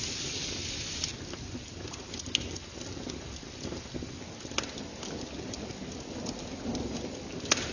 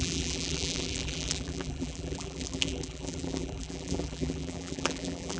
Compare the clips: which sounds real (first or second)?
first